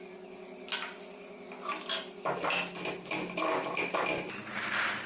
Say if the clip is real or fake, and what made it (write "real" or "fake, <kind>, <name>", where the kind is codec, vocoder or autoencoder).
real